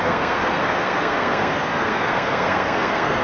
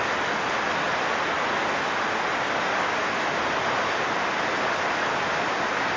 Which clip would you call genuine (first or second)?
second